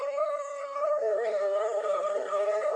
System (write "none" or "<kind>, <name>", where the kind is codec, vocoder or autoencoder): codec, SNAC